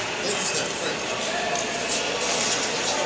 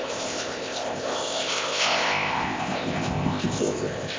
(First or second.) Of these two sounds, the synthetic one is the second